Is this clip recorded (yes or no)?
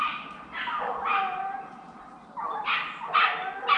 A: yes